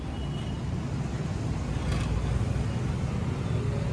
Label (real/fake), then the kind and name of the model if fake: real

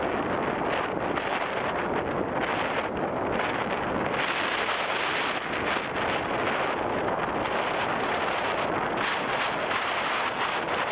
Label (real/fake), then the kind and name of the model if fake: real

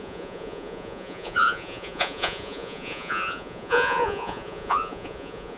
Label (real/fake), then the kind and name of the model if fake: fake, vocoder, Vocos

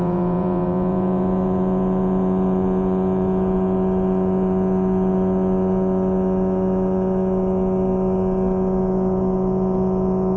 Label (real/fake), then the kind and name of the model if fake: fake, vocoder, Vocos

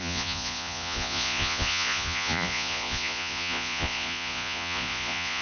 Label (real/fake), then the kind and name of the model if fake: fake, vocoder, Vocos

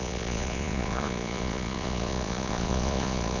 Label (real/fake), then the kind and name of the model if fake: fake, vocoder, Vocos